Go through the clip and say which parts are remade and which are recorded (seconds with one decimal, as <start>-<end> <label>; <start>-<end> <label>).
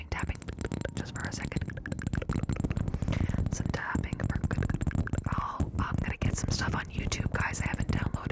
0.0-8.3 recorded